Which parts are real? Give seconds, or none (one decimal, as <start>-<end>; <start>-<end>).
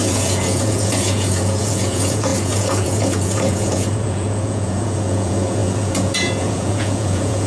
none